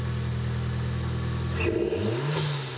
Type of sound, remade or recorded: recorded